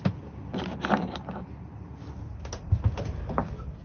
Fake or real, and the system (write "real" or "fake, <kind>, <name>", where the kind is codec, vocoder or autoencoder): real